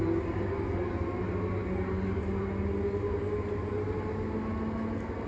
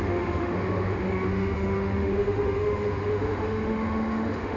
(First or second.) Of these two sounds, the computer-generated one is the second